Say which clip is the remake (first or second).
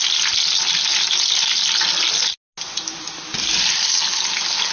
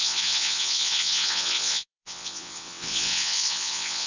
second